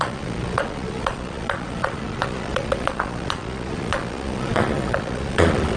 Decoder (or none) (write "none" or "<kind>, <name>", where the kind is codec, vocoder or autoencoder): vocoder, Vocos